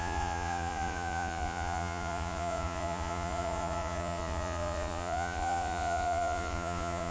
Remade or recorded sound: remade